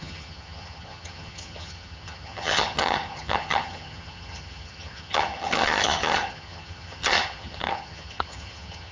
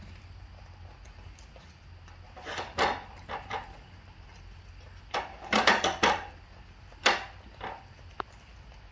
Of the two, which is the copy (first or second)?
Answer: first